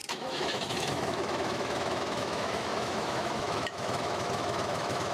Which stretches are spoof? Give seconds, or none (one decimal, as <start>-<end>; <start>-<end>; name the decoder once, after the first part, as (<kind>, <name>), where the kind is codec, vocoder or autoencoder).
0.0-5.1 (autoencoder, DAC-VAE)